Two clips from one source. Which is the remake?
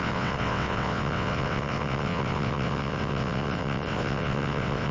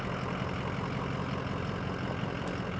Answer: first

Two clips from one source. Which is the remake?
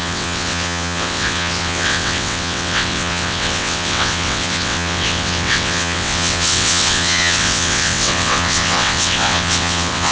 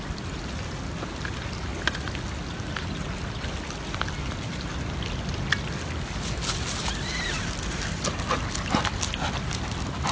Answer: first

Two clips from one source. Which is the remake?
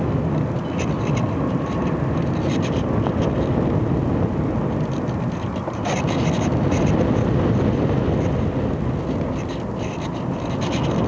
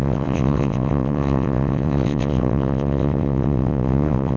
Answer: second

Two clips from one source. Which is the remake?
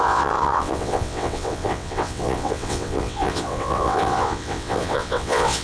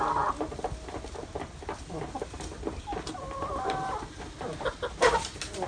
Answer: first